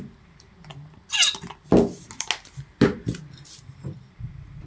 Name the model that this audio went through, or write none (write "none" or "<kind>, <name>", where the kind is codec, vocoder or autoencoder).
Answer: none